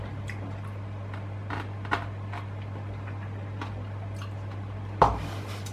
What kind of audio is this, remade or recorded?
recorded